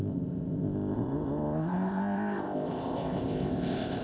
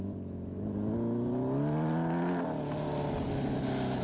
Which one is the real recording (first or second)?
second